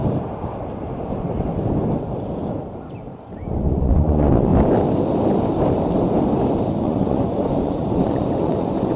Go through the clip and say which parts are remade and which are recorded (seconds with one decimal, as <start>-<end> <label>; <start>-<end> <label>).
0.0-3.4 recorded; 3.4-4.5 remade; 4.5-6.7 recorded; 6.7-9.0 remade